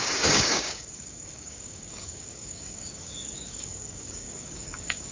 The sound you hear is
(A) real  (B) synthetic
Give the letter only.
B